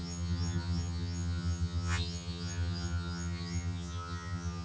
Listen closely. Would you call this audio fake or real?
fake